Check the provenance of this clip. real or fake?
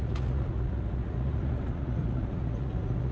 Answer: fake